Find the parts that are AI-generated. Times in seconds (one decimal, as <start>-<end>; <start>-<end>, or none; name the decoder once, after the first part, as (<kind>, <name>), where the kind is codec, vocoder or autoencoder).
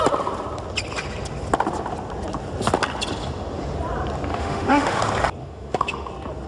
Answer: 4.3-5.0 (autoencoder, DAC-VAE); 5.4-6.1